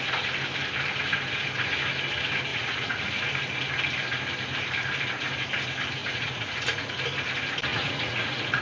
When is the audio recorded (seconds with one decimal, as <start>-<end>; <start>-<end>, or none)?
0.0-2.5; 3.1-6.0; 6.9-7.7